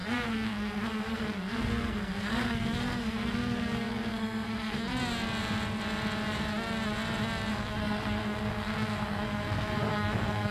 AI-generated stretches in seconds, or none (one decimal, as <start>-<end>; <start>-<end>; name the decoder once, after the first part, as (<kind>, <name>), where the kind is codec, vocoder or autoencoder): 0.0-4.9 (codec, SNAC); 7.5-10.5